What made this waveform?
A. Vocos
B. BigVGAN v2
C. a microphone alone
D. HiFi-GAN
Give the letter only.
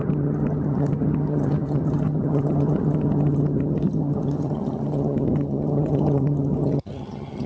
D